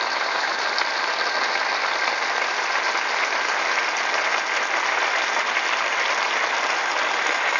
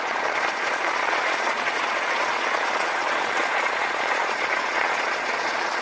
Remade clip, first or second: second